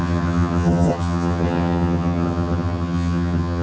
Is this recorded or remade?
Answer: remade